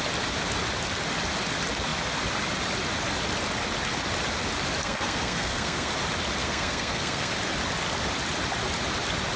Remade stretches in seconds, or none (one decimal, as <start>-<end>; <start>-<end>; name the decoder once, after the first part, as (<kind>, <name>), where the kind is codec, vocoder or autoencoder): 4.8-5.9 (codec, SNAC); 6.4-7.3